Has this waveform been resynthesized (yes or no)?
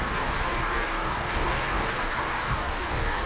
yes